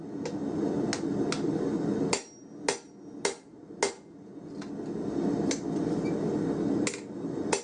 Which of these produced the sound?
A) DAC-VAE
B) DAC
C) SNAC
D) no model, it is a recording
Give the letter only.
D